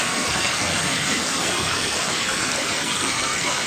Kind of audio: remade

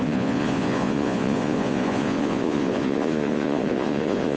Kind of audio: remade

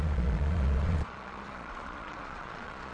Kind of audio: remade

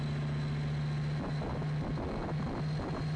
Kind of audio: recorded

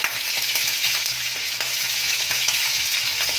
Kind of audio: remade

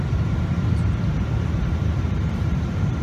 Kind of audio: remade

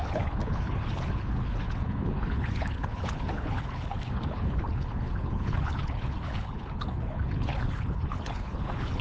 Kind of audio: remade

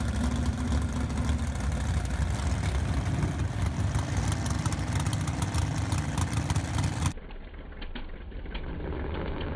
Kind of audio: recorded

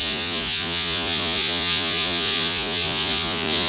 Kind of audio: remade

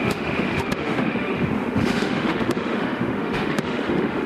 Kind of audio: remade